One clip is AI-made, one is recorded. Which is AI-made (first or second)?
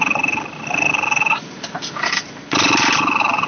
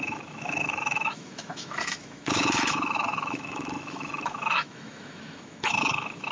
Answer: second